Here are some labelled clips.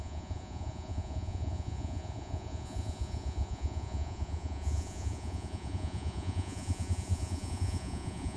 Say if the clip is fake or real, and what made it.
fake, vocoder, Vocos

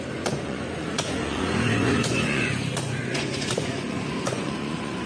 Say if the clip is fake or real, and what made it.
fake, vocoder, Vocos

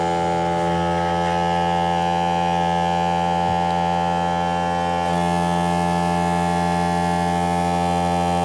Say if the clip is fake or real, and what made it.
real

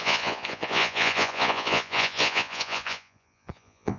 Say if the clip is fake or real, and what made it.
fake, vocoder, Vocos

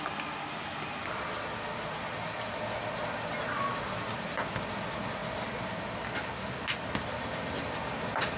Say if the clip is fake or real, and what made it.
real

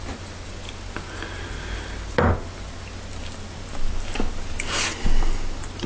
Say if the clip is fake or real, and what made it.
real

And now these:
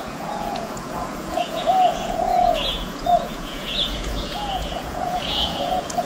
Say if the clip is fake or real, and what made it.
fake, vocoder, Vocos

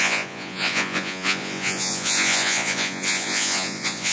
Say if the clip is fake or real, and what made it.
fake, vocoder, Vocos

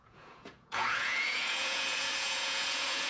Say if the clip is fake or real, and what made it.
fake, vocoder, Vocos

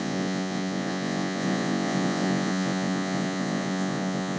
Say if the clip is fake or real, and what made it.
fake, vocoder, Vocos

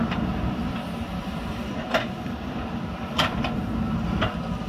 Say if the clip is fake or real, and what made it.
real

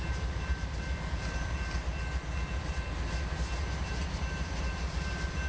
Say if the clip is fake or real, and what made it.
real